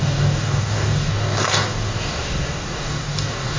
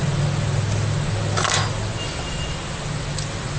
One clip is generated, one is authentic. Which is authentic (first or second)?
second